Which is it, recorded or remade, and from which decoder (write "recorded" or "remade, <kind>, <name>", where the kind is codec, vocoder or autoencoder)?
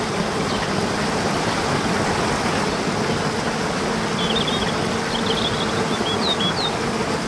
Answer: recorded